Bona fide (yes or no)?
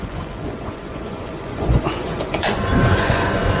no